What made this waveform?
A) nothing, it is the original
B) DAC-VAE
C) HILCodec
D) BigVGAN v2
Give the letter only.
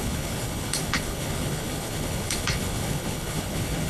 C